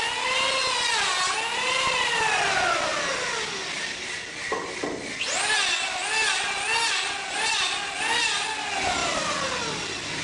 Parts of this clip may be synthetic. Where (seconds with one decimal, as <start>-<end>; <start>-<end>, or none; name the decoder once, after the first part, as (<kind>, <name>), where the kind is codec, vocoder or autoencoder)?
none

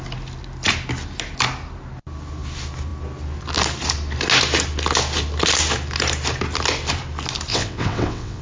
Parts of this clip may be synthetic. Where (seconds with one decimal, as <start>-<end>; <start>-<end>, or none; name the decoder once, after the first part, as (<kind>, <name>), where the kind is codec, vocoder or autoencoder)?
7.5-8.4 (vocoder, WaveNeXt)

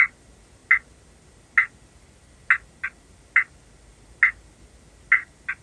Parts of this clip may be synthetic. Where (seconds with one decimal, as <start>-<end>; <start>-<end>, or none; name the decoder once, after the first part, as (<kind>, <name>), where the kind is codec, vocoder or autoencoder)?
none

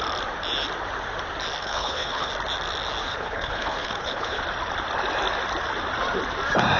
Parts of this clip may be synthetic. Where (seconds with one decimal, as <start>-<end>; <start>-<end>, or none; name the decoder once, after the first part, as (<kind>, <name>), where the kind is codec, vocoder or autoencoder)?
1.6-2.3 (codec, HILCodec); 3.0-4.4

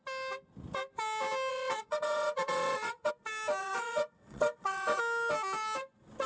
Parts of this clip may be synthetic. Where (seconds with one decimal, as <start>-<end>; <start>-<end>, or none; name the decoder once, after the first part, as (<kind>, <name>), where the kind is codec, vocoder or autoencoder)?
1.5-3.1 (vocoder, WaveNeXt); 3.6-5.0

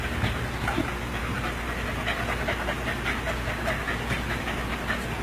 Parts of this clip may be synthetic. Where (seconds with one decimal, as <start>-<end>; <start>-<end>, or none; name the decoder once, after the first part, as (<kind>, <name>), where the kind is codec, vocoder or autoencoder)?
none